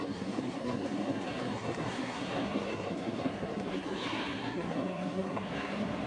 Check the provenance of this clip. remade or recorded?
remade